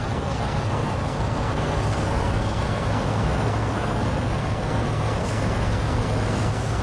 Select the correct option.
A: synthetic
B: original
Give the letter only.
A